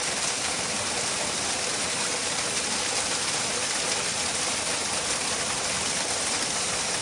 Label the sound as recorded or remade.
recorded